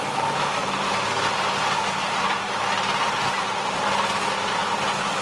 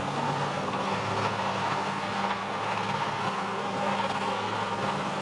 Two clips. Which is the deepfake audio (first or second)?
second